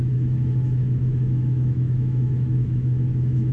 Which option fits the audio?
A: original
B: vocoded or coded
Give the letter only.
B